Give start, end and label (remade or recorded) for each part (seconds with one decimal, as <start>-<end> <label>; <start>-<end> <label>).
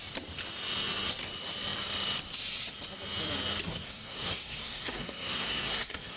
0.0-3.7 recorded; 3.7-6.2 remade